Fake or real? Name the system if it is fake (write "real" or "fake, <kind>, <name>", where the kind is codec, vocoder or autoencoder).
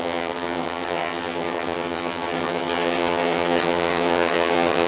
fake, vocoder, HiFi-GAN